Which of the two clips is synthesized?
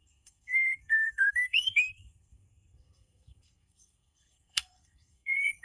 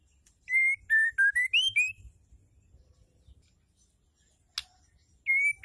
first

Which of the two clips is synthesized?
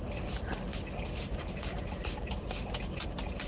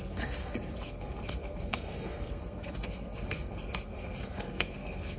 second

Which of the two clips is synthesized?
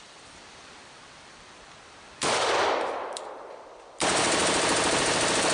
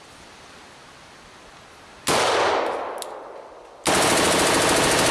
first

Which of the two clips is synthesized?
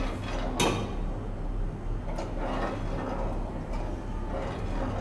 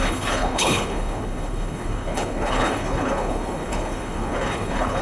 second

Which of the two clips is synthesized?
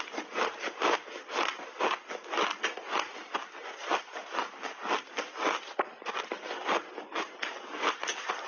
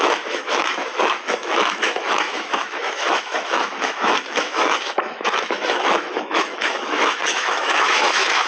second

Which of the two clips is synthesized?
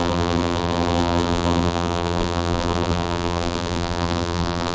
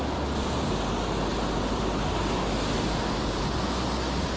first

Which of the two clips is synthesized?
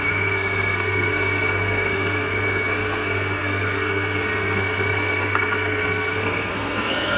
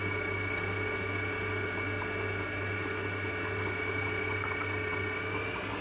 first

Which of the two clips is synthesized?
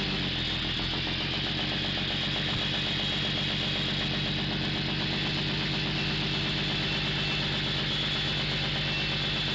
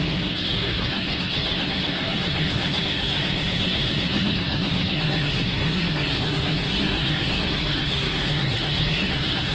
second